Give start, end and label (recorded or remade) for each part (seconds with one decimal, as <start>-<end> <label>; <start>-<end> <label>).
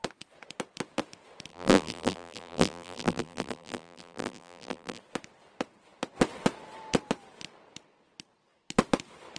0.0-1.5 recorded; 1.5-5.0 remade; 5.0-9.4 recorded